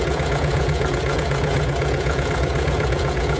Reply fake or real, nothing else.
fake